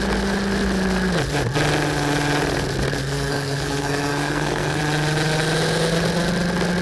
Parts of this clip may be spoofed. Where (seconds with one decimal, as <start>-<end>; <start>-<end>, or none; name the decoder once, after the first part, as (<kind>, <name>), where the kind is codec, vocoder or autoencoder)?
3.0-4.8 (codec, SNAC)